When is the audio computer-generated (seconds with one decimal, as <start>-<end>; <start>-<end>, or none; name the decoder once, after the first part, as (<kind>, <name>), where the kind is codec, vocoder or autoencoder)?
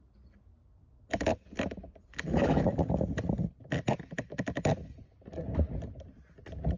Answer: none